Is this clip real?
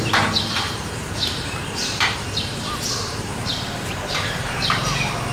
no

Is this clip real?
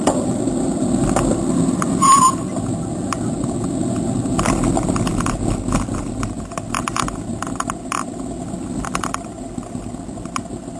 yes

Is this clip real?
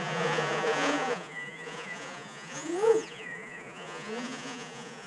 no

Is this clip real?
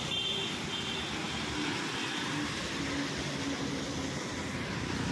yes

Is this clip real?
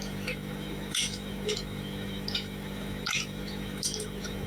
no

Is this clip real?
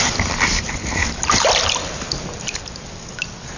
yes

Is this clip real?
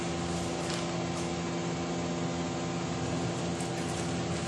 yes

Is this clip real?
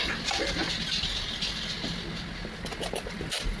yes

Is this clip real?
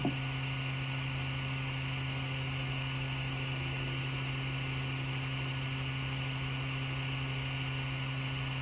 yes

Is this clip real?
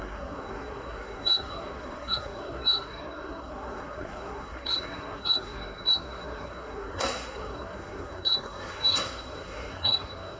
no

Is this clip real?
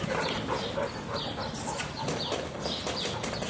yes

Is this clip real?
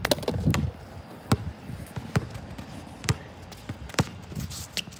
yes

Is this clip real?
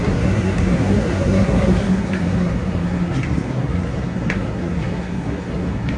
no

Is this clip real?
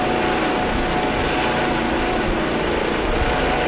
yes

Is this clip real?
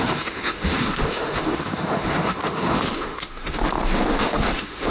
no